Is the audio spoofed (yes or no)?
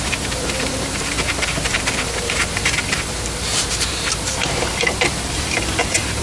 yes